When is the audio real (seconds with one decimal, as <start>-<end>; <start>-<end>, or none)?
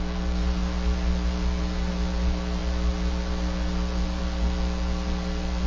0.0-5.7